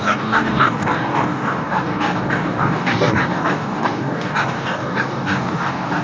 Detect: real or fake fake